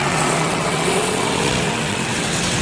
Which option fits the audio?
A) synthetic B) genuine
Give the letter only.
A